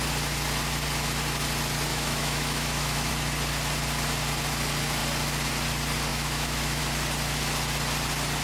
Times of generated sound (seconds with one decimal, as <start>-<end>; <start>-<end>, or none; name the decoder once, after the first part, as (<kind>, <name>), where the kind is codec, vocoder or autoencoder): 1.9-3.1 (autoencoder, DAC-VAE); 6.1-6.8